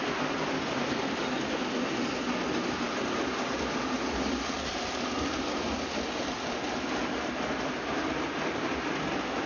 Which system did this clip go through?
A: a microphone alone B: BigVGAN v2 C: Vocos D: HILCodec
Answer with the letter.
A